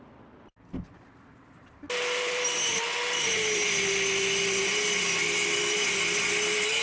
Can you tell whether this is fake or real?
real